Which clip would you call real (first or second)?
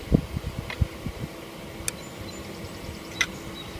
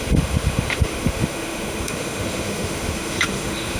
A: first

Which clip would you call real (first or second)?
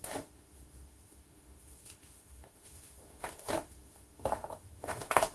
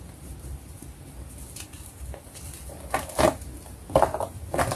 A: second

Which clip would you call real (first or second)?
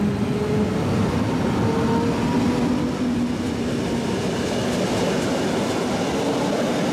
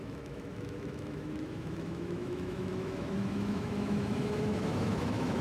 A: first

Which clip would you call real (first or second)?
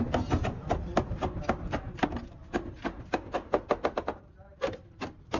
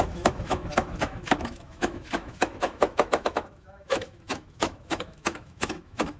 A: first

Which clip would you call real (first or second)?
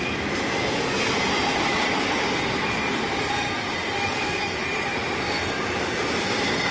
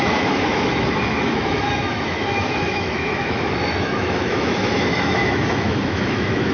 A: first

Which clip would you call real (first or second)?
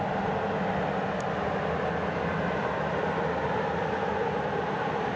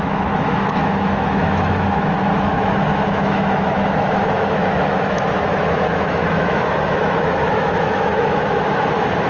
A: first